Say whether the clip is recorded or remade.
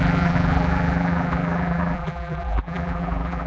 remade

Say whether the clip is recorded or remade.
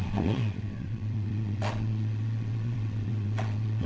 remade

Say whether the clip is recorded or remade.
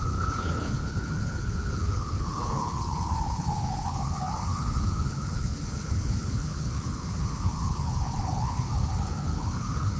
remade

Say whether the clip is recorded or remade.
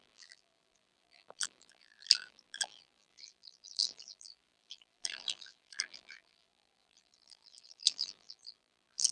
remade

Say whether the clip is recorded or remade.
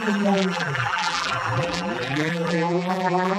remade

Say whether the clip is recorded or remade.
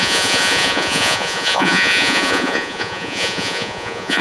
remade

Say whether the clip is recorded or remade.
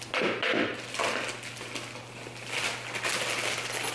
recorded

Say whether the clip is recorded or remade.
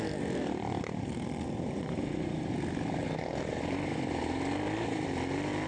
recorded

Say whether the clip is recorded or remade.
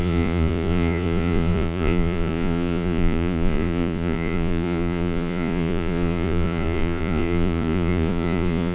remade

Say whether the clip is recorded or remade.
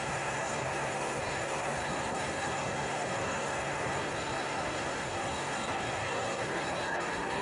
remade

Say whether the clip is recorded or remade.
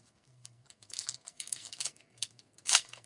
remade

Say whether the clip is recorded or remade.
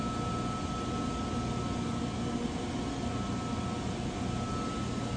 recorded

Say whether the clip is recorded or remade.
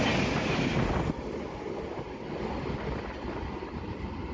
recorded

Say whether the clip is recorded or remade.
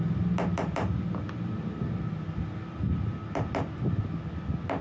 recorded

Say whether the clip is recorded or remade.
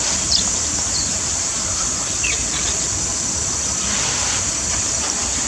remade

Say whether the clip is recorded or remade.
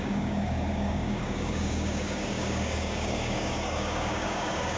remade